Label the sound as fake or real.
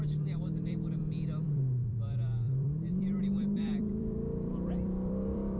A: fake